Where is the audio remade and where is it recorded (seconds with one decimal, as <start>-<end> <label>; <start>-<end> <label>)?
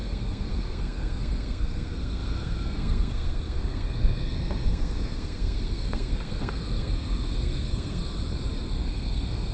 0.0-8.0 remade; 8.0-8.7 recorded; 8.7-9.5 remade